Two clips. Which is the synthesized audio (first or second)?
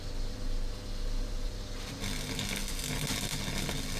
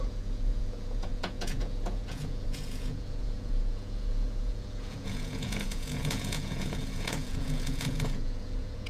second